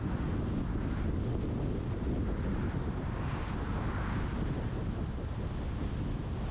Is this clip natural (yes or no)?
yes